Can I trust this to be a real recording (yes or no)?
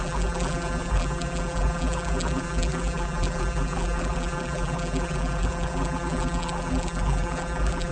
no